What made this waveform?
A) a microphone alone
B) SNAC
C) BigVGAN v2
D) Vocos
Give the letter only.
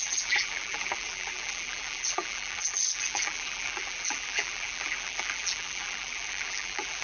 C